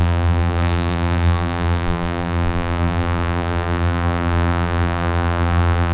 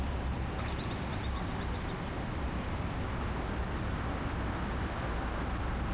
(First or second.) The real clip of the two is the second